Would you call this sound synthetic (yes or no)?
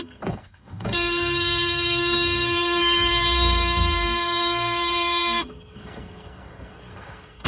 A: yes